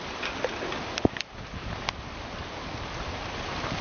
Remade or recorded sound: recorded